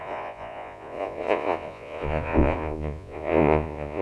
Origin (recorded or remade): remade